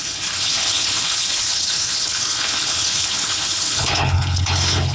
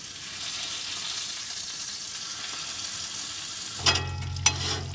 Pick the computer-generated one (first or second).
first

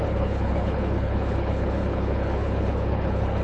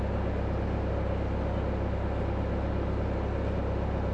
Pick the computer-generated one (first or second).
first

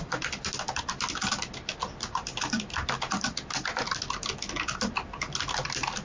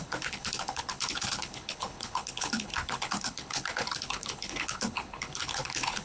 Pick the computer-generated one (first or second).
second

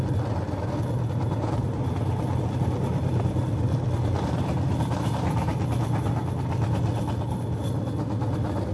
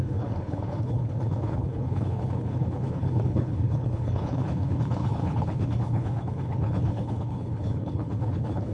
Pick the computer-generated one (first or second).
second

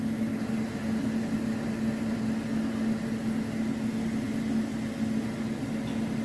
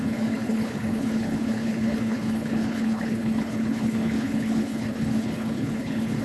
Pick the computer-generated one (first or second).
second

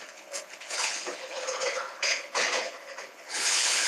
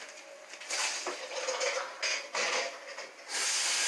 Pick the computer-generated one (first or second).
first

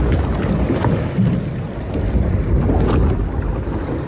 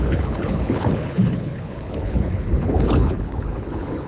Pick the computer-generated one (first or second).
second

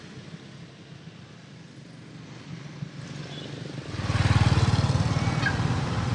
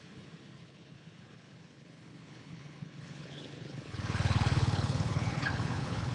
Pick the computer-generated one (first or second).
second